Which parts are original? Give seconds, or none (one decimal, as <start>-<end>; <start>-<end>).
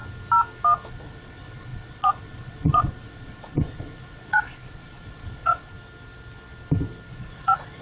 0.0-0.9; 5.7-7.1